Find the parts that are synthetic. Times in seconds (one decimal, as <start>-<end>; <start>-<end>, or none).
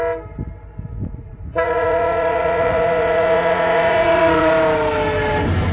1.1-4.5